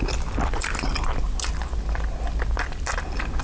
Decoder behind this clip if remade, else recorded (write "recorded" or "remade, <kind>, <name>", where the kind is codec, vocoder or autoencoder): recorded